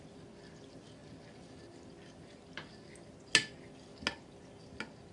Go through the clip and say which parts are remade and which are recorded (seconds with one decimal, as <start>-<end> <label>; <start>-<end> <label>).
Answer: 0.0-5.1 recorded